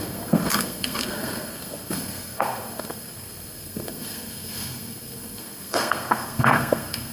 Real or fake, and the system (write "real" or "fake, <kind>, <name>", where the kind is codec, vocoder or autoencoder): fake, codec, SNAC